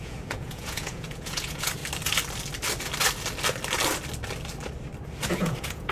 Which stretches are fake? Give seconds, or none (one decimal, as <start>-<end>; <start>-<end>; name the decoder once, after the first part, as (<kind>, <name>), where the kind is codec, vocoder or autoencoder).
0.0-1.8 (vocoder, Vocos); 5.3-5.9